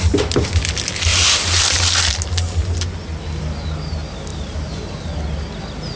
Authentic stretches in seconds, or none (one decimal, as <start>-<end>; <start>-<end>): 0.0-4.3; 5.1-6.0